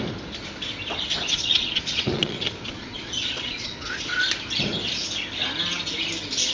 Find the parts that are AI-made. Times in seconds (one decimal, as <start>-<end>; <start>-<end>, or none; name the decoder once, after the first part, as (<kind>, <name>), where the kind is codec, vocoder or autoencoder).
1.1-4.0 (vocoder, Vocos)